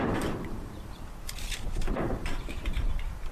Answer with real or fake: fake